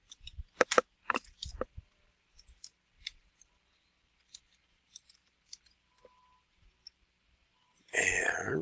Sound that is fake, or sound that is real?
fake